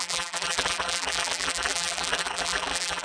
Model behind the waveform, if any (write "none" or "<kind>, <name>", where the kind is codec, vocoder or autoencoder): vocoder, BigVGAN v2